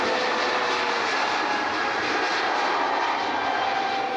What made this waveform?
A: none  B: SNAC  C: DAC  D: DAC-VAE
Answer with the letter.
A